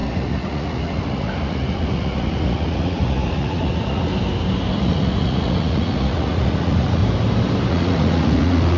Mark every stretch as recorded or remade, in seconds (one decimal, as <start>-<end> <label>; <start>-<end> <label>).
0.0-4.1 remade; 4.1-4.8 recorded; 4.8-7.0 remade; 7.0-7.7 recorded; 7.7-8.8 remade